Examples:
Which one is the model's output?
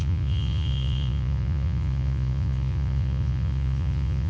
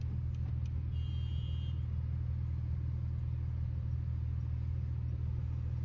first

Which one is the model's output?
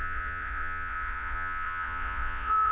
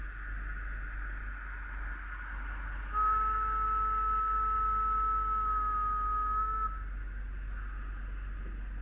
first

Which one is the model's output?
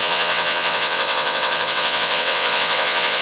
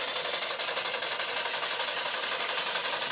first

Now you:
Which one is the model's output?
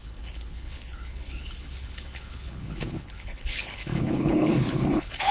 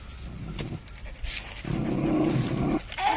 first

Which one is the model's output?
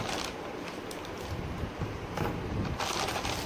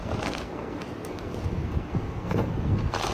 second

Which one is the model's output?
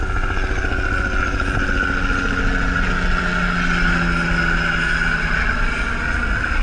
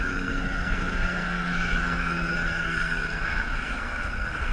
second